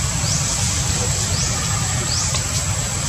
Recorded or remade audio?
recorded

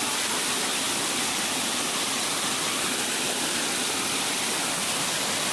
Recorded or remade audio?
recorded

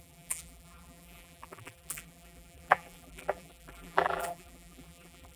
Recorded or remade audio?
remade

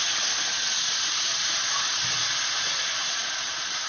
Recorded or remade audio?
recorded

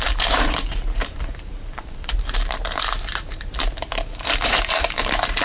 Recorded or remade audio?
remade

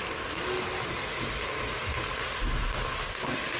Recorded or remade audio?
recorded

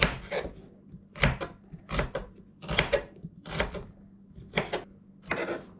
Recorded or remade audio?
recorded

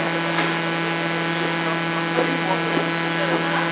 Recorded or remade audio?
recorded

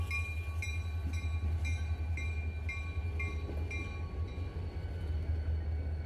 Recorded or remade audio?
recorded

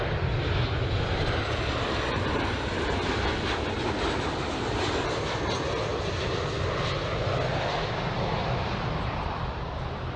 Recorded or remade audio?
recorded